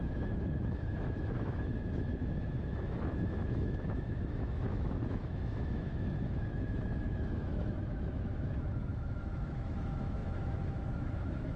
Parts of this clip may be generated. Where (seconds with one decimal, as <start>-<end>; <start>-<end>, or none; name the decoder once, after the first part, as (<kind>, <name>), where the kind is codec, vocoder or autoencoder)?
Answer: 0.0-11.6 (autoencoder, DAC-VAE)